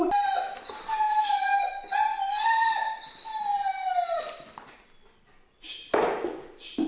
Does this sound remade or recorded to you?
recorded